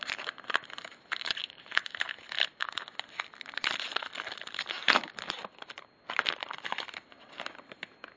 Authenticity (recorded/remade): recorded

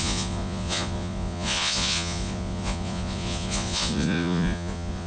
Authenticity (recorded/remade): remade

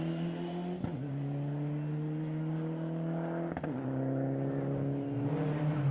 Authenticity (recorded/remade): recorded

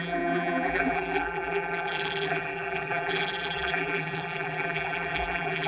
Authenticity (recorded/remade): remade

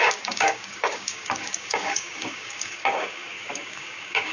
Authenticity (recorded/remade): remade